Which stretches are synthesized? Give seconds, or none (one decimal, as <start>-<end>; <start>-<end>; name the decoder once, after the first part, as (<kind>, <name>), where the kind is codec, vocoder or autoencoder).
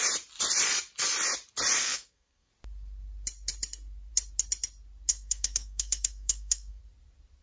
1.8-2.5 (codec, SNAC); 5.1-6.8